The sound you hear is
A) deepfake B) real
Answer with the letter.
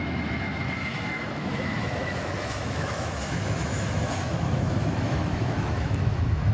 A